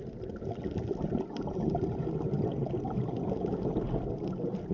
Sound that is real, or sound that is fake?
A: real